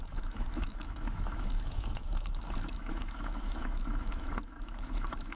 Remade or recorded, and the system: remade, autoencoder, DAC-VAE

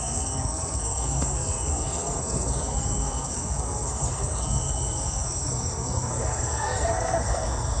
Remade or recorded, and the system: remade, codec, SNAC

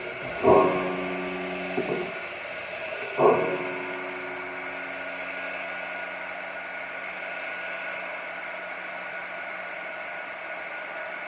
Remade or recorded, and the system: recorded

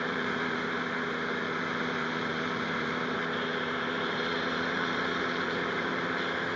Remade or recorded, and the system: remade, vocoder, BigVGAN v2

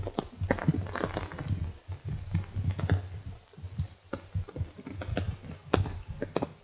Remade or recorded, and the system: recorded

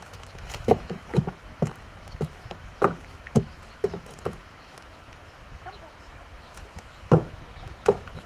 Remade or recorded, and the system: remade, autoencoder, DAC-VAE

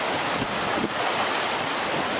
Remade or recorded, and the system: recorded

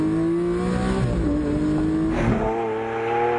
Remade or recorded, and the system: recorded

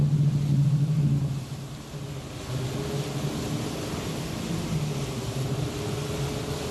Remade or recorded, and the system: recorded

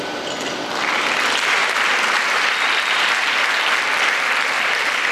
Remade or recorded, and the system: recorded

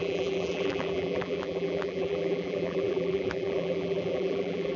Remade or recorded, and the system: remade, vocoder, BigVGAN v2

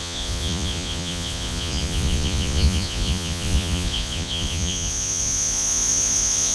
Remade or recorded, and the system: remade, vocoder, Vocos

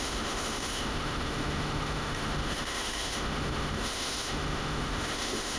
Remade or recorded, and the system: remade, autoencoder, DAC-VAE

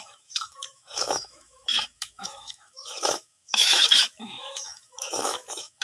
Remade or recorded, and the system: remade, autoencoder, DAC-VAE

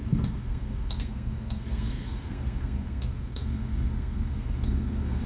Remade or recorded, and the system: remade, codec, SNAC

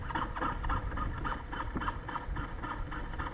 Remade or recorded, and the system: recorded